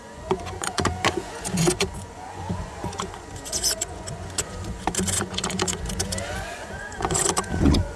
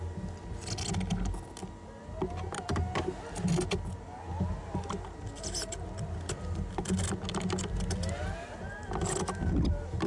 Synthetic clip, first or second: first